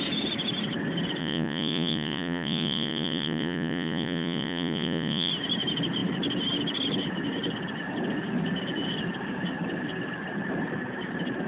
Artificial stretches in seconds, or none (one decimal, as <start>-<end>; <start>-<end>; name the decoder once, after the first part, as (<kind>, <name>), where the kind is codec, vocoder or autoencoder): 1.2-5.3 (vocoder, Vocos)